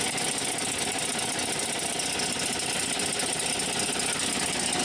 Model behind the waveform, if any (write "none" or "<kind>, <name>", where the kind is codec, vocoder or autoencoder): none